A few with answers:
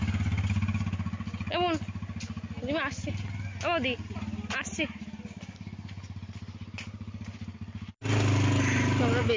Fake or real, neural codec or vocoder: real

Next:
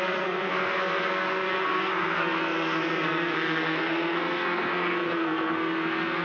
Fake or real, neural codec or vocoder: fake, codec, SNAC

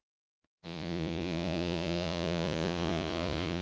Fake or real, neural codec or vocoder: fake, vocoder, Vocos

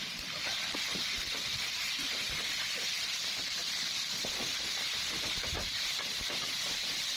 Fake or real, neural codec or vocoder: real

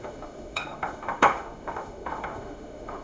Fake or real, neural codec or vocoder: fake, autoencoder, DAC-VAE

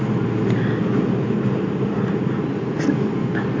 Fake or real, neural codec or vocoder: real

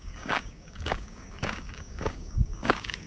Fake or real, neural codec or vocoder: fake, codec, DAC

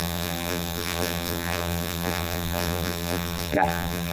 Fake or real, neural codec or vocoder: fake, vocoder, BigVGAN v2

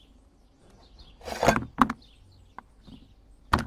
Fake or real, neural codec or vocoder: real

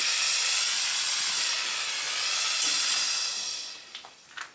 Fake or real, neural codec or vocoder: real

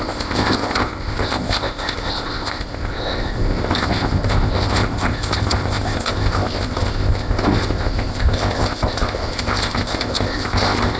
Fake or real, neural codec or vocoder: fake, codec, ZipCodec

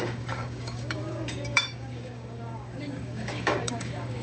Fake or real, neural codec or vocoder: fake, codec, DAC